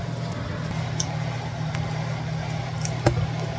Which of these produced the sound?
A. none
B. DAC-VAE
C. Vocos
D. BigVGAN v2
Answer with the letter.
A